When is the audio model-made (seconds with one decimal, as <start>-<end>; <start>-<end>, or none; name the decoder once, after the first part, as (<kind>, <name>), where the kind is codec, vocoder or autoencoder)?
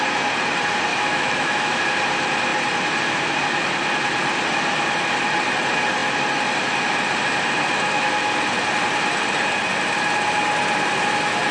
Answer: 0.9-1.8 (autoencoder, DAC-VAE)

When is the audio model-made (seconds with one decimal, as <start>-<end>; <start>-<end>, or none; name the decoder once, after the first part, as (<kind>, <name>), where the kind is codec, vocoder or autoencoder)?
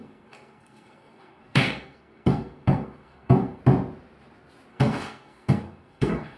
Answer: 0.0-3.6 (codec, SNAC); 4.7-6.4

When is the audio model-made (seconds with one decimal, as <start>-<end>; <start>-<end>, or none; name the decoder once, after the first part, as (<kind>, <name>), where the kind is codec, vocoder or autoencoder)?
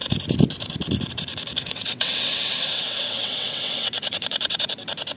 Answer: 1.6-4.7 (vocoder, WaveNeXt)